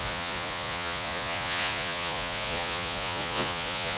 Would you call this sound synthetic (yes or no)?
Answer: yes